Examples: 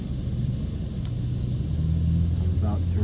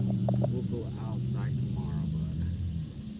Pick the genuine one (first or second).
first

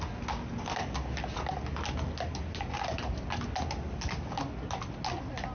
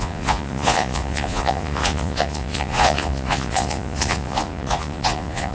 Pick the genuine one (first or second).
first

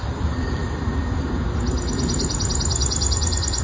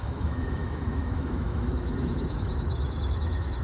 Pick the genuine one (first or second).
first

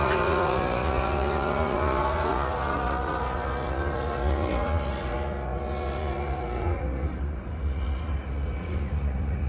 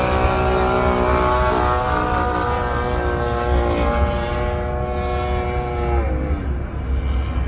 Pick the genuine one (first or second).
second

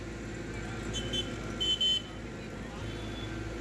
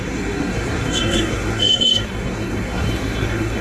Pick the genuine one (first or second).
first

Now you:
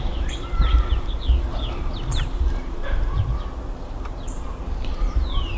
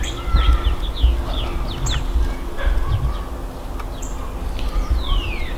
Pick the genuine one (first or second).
second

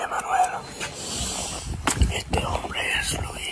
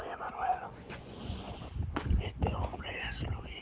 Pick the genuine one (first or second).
first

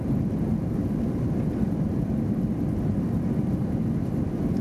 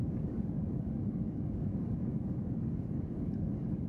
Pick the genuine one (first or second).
first